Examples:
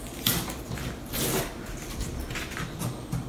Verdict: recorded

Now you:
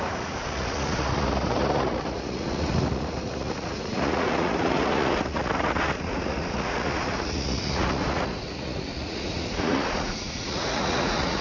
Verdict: remade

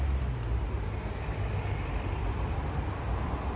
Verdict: recorded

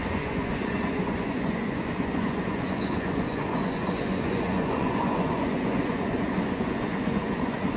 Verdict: remade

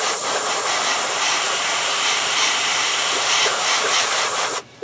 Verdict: remade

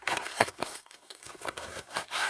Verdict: remade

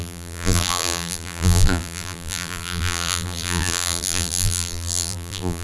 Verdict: remade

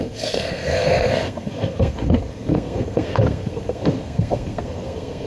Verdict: remade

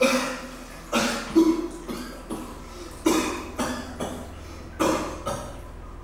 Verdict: recorded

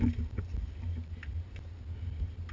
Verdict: recorded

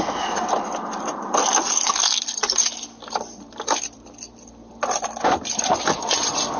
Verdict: remade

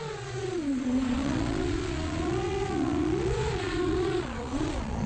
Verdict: remade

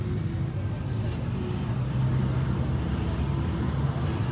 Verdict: recorded